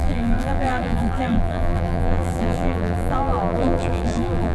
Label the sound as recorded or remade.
remade